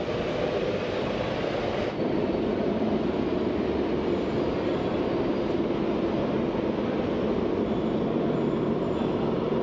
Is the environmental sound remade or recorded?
remade